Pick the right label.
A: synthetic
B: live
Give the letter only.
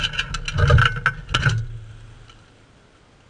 B